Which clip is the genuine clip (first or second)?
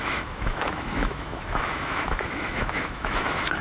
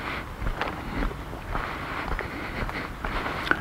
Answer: second